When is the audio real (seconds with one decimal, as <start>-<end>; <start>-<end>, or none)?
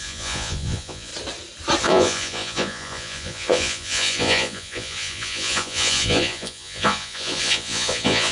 1.1-1.8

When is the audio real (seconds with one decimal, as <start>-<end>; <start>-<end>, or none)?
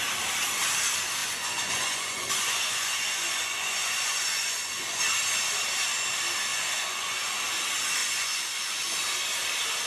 0.0-1.2; 5.0-6.5; 7.4-8.0; 9.0-9.9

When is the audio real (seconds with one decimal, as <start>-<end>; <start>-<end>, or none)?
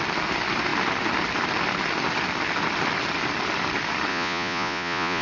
0.0-4.1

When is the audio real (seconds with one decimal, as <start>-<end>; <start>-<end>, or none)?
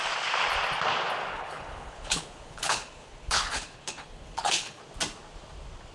0.0-1.3; 4.8-5.9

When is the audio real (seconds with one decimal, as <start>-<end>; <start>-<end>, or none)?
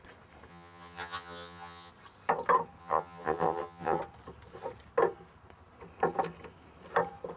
0.0-0.5; 1.9-2.8; 4.0-7.4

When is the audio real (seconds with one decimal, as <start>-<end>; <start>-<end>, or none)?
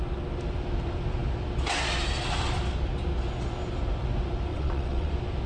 0.0-4.5; 5.1-5.5